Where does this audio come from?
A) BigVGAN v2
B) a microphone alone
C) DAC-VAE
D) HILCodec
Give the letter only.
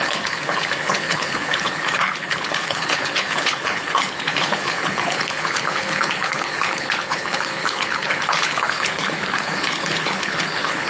D